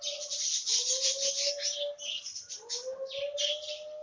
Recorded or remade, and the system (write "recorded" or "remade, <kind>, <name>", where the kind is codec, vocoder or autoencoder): recorded